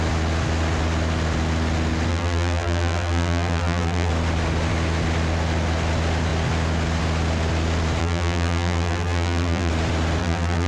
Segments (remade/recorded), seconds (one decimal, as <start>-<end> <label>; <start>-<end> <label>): 0.0-2.1 recorded; 2.1-4.1 remade; 4.1-8.0 recorded; 8.0-9.7 remade; 9.7-10.2 recorded; 10.2-10.7 remade